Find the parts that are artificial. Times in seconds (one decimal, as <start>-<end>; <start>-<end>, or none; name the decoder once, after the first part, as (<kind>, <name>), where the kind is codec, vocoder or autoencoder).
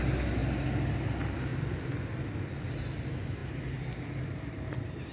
none